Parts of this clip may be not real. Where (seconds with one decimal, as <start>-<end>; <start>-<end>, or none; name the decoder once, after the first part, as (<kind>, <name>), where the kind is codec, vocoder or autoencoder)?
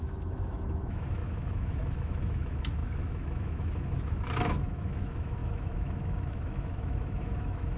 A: 0.0-7.8 (autoencoder, DAC-VAE)